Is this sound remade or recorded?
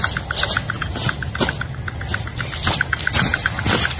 recorded